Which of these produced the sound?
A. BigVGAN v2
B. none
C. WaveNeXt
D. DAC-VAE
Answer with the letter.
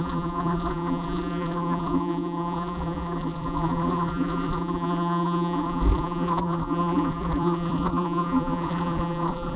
A